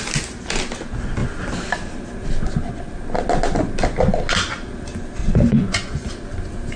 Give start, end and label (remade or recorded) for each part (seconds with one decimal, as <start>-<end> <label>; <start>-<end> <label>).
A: 0.0-5.2 recorded; 5.2-6.1 remade; 6.1-6.8 recorded